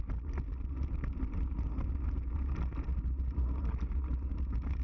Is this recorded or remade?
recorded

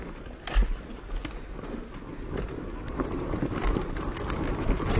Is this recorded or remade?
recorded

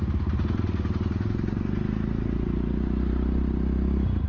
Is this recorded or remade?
recorded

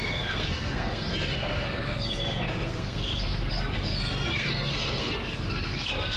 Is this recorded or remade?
remade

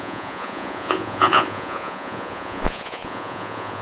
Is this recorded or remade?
remade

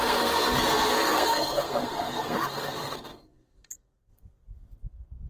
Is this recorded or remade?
remade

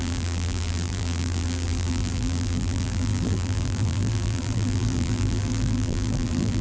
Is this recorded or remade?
remade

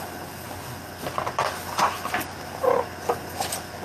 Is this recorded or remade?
recorded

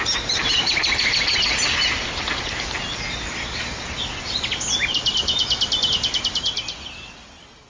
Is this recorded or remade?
recorded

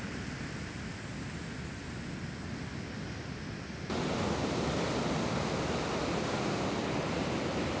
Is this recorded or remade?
recorded